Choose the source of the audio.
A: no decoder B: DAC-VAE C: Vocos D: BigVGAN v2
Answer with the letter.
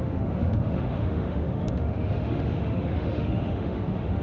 B